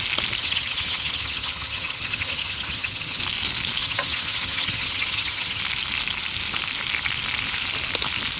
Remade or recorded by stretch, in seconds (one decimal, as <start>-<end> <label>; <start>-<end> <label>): 0.0-0.4 recorded; 0.4-3.2 remade; 3.2-3.8 recorded; 3.8-5.6 remade; 5.6-8.4 recorded